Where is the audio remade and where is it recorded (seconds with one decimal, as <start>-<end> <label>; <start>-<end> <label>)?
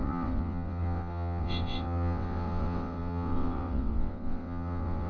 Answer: 0.0-5.1 remade